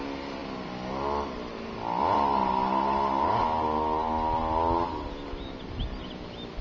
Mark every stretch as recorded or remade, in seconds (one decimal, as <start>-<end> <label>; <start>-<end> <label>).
0.0-6.6 recorded

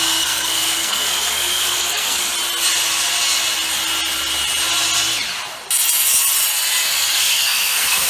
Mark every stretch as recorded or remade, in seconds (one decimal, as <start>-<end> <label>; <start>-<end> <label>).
0.0-2.3 remade; 2.3-7.1 recorded; 7.1-8.1 remade

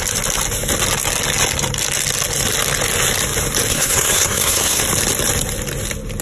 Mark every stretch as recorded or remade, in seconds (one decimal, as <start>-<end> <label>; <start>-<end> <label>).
0.0-3.7 recorded; 3.7-4.8 remade; 4.8-6.2 recorded

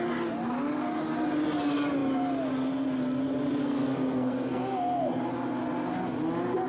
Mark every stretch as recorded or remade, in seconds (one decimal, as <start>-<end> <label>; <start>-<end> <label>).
0.0-3.6 recorded; 3.6-5.1 remade; 5.1-6.7 recorded

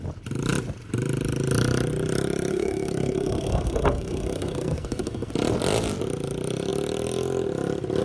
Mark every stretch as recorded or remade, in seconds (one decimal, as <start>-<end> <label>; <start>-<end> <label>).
0.0-2.5 recorded; 2.5-5.3 remade; 5.3-8.0 recorded

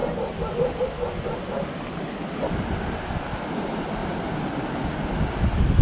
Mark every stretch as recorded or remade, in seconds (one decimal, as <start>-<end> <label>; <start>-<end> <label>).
0.0-5.8 recorded

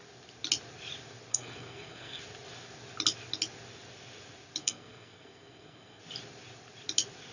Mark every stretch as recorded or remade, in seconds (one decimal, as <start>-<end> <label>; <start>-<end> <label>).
0.0-1.3 recorded; 1.3-2.2 remade; 2.2-4.6 recorded; 4.6-6.0 remade; 6.0-7.3 recorded